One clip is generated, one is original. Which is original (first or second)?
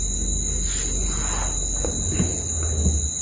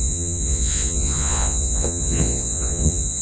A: first